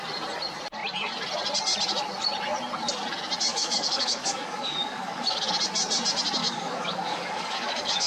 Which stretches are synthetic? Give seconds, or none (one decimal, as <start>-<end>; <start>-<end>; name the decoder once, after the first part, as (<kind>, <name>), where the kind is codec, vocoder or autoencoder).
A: 3.5-5.5 (codec, DAC); 6.4-8.1